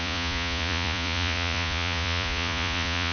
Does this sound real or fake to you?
fake